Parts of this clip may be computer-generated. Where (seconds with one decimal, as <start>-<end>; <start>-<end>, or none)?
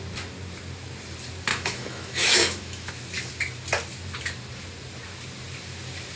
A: 1.5-2.9